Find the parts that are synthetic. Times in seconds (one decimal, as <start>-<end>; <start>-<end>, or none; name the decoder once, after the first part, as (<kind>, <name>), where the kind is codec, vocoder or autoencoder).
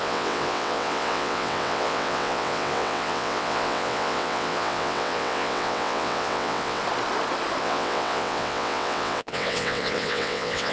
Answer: 0.0-6.8 (vocoder, WaveNeXt); 7.6-10.7